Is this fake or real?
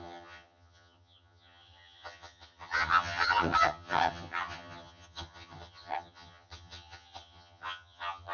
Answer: fake